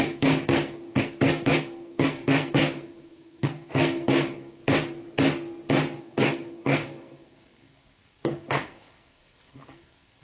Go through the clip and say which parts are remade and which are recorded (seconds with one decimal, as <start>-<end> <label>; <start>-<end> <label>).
0.0-4.6 remade; 4.6-6.0 recorded; 6.0-10.2 remade